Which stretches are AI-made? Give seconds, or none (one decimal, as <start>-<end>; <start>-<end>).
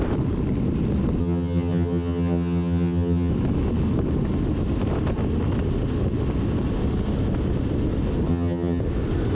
1.2-3.3; 8.3-8.8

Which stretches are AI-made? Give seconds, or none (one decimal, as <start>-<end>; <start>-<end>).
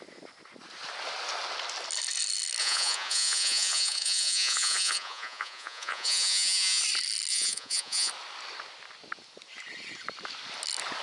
2.6-6.8; 7.3-8.1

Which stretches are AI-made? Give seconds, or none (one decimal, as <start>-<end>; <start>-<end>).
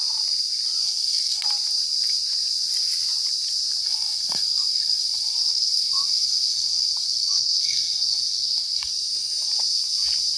0.8-1.4; 3.8-8.9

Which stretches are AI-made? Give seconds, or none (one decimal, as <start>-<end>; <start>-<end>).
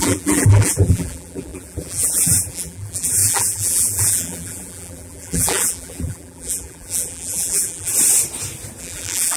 0.0-7.9; 8.8-9.4